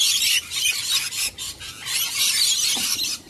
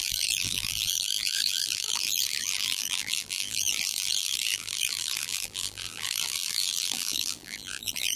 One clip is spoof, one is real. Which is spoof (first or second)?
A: second